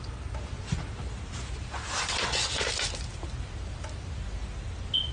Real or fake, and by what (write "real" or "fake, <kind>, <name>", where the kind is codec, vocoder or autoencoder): real